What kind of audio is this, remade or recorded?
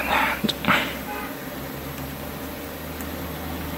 recorded